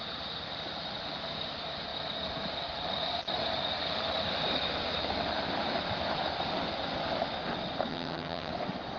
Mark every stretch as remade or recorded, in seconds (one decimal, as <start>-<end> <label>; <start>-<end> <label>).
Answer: 0.0-7.9 recorded; 7.9-8.5 remade; 8.5-9.0 recorded